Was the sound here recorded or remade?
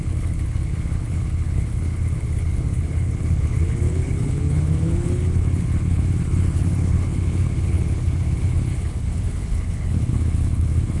remade